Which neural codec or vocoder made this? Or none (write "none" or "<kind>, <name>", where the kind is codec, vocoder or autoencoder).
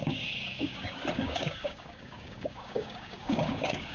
codec, DAC